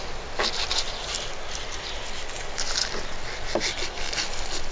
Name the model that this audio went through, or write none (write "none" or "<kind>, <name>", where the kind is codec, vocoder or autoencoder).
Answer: none